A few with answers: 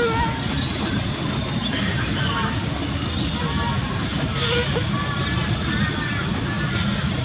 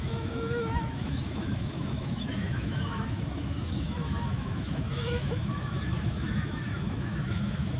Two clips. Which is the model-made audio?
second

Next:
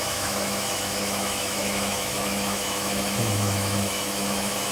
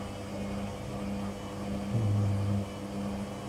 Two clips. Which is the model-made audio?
first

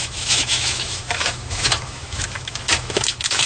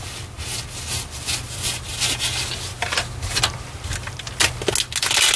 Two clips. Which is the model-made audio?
first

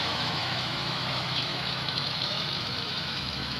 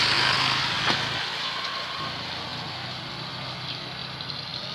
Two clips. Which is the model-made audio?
first